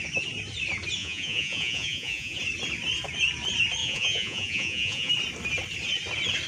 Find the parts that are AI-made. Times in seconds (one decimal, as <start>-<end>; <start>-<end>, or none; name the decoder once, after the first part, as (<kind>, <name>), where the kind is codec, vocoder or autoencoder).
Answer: 1.0-2.4 (vocoder, Vocos); 3.8-5.1